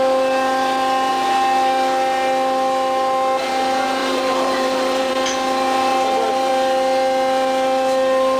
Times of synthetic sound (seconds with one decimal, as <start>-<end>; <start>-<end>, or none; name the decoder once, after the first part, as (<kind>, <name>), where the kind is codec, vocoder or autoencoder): 4.0-5.1 (vocoder, BigVGAN v2); 5.9-6.5

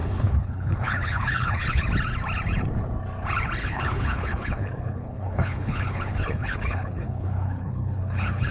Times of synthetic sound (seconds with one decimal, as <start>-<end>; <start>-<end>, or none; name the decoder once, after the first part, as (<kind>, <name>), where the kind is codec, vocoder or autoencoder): 0.0-1.8 (codec, HILCodec); 3.6-8.5

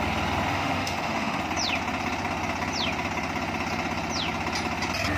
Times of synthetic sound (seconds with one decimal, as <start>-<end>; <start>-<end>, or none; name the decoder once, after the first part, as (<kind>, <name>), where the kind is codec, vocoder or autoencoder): 0.5-1.4 (autoencoder, DAC-VAE)

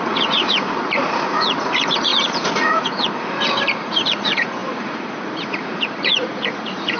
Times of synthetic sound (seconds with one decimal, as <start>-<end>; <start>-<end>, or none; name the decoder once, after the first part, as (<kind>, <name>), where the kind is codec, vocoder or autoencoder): 0.0-7.0 (vocoder, Vocos)

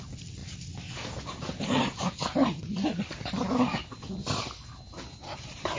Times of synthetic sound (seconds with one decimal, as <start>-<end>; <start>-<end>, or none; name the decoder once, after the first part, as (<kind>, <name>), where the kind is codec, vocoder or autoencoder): 0.4-3.9 (vocoder, BigVGAN v2)

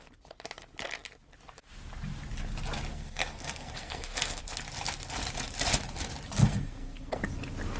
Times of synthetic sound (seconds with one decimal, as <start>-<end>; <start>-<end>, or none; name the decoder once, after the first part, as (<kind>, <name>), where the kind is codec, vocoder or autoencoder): 2.9-4.4 (codec, SNAC); 6.4-7.2

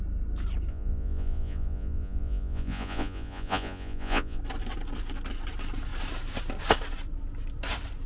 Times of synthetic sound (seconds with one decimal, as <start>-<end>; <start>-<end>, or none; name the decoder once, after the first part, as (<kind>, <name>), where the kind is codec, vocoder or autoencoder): 0.7-4.4 (vocoder, Vocos)

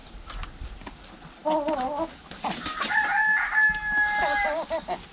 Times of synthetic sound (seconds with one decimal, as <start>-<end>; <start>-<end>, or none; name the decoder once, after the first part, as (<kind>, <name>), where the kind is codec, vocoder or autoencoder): none